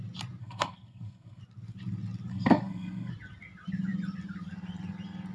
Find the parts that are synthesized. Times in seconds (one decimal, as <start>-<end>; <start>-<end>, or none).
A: 0.4-1.4; 2.3-3.1